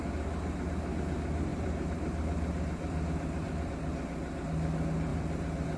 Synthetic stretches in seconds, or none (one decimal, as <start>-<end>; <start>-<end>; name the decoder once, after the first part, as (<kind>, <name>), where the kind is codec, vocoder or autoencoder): 1.5-3.7 (vocoder, BigVGAN v2); 5.1-5.8